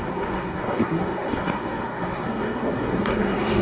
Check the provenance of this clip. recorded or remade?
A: remade